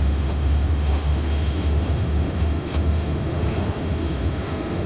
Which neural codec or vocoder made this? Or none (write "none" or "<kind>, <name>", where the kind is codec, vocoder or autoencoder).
autoencoder, DAC-VAE